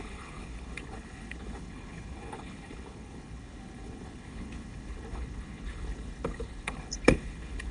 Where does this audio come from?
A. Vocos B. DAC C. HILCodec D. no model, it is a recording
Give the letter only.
C